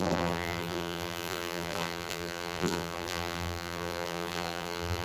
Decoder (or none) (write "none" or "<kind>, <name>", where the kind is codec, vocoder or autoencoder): vocoder, BigVGAN v2